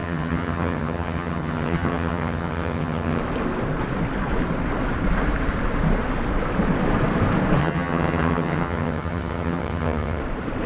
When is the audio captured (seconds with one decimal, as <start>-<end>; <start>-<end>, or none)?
3.2-7.6; 10.2-10.7